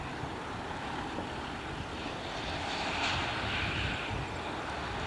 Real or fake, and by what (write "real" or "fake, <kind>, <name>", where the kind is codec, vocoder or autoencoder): real